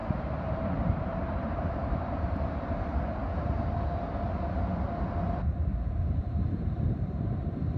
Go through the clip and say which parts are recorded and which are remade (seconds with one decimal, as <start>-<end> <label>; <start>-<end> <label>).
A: 0.0-3.0 remade; 3.0-5.7 recorded; 5.7-7.8 remade